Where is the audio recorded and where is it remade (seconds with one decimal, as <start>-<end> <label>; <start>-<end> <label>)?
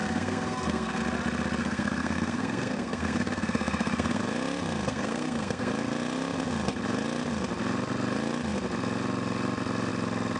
0.0-1.0 remade; 1.0-1.6 recorded; 1.6-4.2 remade; 4.2-4.9 recorded; 4.9-5.7 remade; 5.7-10.4 recorded